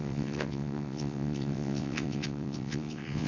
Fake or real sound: fake